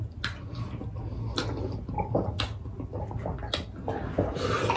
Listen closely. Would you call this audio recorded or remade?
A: recorded